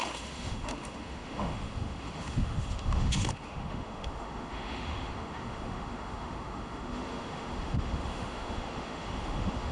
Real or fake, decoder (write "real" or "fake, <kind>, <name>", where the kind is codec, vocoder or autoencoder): fake, autoencoder, DAC-VAE